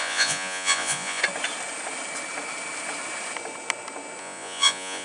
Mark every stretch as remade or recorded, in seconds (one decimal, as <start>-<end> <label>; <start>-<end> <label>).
0.0-1.2 remade; 1.2-4.2 recorded; 4.2-5.0 remade